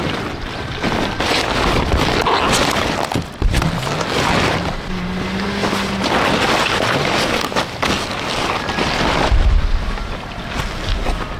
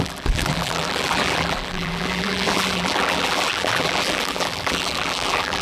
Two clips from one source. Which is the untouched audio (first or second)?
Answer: first